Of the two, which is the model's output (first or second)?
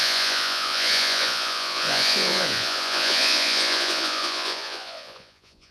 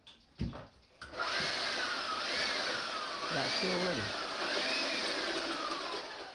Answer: first